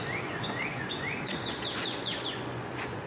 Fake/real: fake